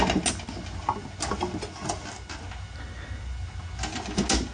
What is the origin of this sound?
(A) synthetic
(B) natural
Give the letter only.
B